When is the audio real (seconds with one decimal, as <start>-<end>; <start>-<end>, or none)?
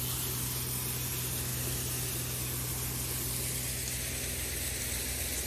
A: 0.0-5.5